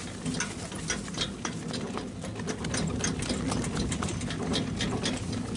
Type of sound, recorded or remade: recorded